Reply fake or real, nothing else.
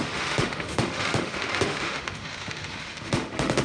fake